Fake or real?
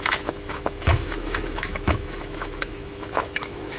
fake